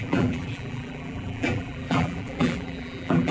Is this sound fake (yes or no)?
yes